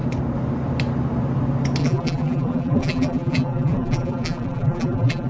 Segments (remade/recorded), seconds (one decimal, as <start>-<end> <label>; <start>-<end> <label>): 0.0-1.8 recorded; 1.8-5.3 remade